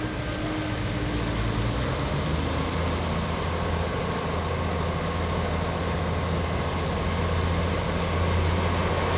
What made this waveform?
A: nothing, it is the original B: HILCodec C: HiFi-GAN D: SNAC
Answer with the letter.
A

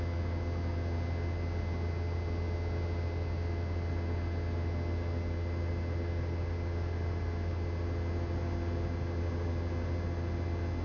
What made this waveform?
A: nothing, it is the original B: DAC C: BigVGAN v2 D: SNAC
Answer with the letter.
A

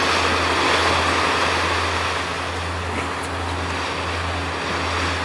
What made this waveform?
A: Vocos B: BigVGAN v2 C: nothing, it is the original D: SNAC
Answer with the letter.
C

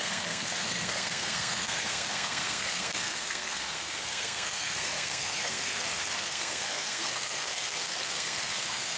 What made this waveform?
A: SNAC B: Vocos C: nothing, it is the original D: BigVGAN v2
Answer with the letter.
A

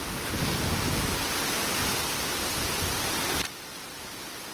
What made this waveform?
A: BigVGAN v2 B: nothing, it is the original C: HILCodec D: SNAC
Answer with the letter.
B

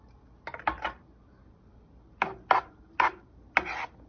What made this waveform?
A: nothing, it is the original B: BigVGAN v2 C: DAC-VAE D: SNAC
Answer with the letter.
A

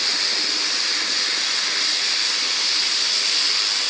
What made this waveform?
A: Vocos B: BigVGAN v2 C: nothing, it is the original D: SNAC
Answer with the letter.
C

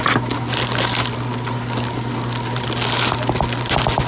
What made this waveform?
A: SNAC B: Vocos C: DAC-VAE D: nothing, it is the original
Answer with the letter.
D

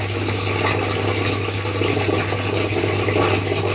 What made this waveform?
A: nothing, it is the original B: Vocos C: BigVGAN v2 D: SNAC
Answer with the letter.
A